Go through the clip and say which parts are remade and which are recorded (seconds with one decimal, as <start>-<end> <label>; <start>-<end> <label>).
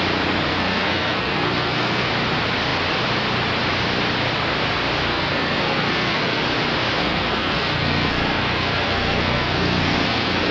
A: 0.0-0.5 recorded; 0.5-2.1 remade; 2.1-5.1 recorded; 5.1-6.4 remade; 6.4-7.0 recorded; 7.0-10.5 remade